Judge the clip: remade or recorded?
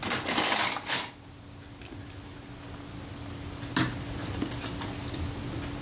recorded